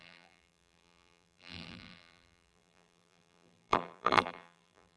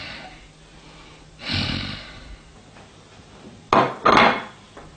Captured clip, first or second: second